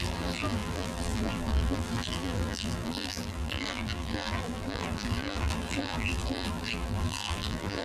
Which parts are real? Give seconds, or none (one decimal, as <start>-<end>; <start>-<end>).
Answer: none